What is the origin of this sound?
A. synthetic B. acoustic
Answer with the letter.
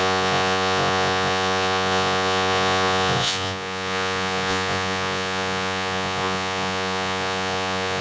A